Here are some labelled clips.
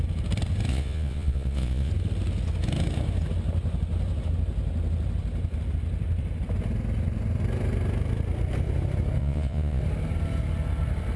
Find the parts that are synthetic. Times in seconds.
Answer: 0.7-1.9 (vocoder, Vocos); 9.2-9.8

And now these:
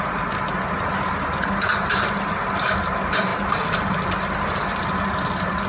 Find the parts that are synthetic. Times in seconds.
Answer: none

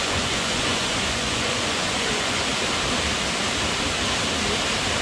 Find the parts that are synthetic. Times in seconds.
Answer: 0.0-2.5 (vocoder, Vocos)

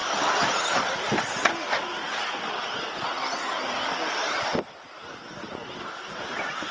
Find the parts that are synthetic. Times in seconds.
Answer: none

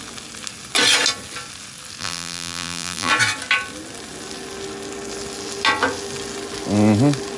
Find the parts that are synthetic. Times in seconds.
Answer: 2.0-3.1 (vocoder, BigVGAN v2)

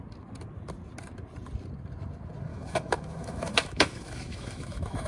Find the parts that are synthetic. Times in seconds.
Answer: 2.5-5.1 (autoencoder, DAC-VAE)

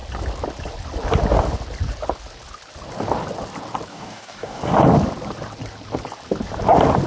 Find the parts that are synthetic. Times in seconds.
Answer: 3.9-4.6 (codec, DAC)

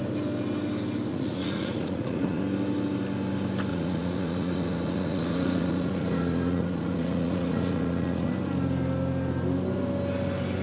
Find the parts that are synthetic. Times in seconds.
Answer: 1.1-2.4 (vocoder, Vocos); 3.7-8.3